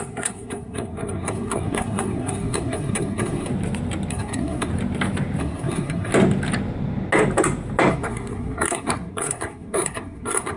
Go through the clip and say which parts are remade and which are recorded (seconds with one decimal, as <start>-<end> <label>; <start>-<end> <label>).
0.0-3.5 remade; 3.5-4.1 recorded; 4.1-4.7 remade; 4.7-5.4 recorded; 5.4-6.1 remade; 6.1-7.9 recorded; 7.9-10.6 remade